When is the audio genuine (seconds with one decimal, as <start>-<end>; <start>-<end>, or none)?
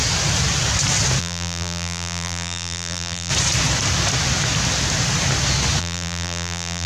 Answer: 0.0-1.2; 3.3-5.8